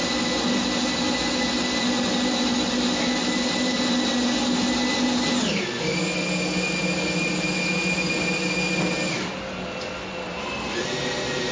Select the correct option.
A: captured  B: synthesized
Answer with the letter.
A